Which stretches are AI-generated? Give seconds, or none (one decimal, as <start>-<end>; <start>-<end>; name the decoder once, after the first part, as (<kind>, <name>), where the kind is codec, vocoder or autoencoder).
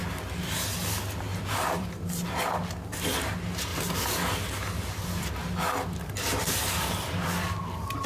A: 1.3-2.3 (vocoder, BigVGAN v2); 3.7-8.1